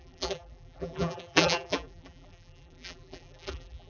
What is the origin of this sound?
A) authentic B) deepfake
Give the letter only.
B